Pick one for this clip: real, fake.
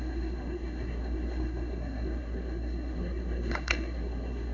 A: fake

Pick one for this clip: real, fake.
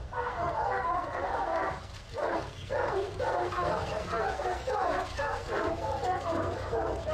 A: fake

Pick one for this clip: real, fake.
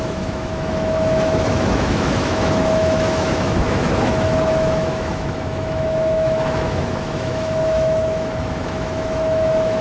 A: fake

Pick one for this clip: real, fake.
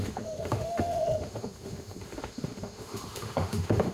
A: fake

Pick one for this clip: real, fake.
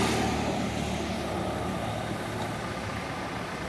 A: real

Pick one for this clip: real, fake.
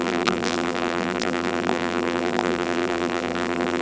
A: fake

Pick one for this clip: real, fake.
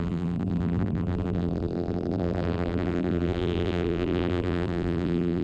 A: fake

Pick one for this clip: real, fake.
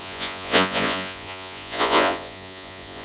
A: fake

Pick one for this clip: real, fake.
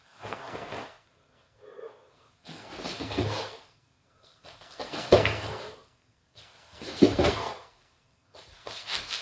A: fake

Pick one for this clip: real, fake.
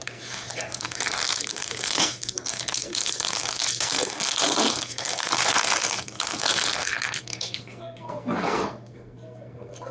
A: fake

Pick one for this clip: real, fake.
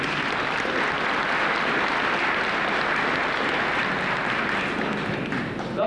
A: real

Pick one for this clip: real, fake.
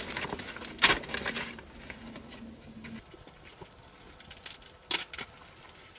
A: real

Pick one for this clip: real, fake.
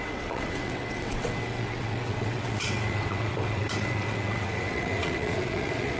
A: fake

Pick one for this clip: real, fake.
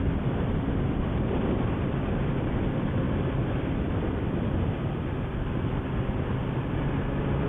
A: real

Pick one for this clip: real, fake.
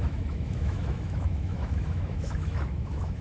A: fake